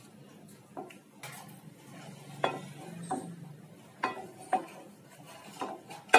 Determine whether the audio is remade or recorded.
recorded